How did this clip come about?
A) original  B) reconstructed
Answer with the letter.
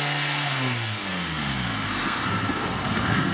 B